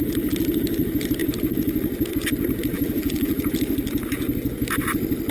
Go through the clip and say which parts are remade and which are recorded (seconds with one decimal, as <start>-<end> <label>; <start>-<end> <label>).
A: 0.0-2.7 recorded; 2.7-3.4 remade; 3.4-5.3 recorded